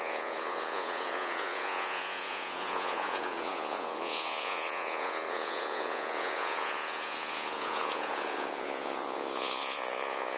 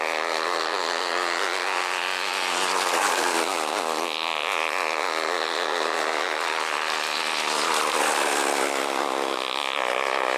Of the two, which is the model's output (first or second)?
first